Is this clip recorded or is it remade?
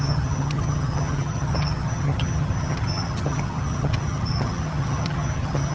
remade